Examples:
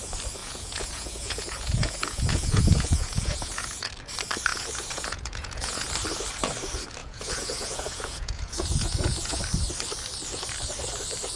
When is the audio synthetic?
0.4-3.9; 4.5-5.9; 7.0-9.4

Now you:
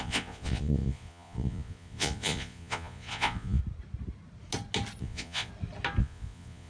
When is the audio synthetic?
0.0-3.6; 5.0-5.5; 6.0-6.7

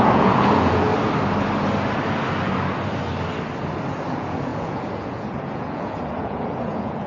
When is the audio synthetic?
0.0-0.9; 4.1-7.1

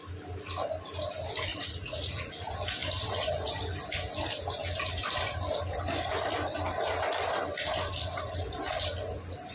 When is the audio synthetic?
1.5-2.3